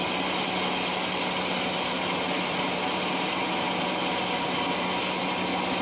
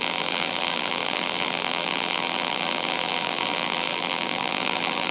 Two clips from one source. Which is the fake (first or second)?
second